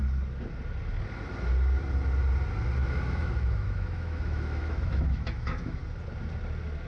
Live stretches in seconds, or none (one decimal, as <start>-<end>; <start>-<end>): 0.0-2.8; 5.8-6.9